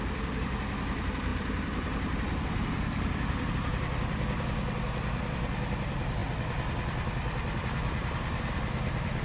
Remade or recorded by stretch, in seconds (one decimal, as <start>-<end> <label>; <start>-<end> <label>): 0.0-9.2 remade